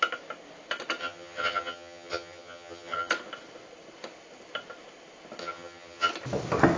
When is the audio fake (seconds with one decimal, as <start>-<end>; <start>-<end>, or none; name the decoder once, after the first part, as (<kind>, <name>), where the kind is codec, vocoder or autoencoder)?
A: 1.0-3.1 (vocoder, HiFi-GAN); 5.4-6.1